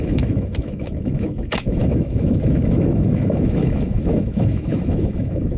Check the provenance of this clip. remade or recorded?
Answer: remade